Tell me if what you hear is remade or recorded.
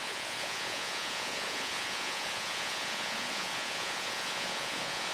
remade